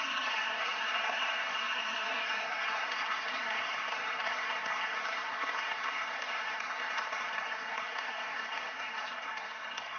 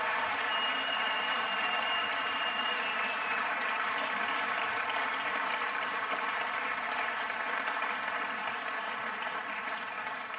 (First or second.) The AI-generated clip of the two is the first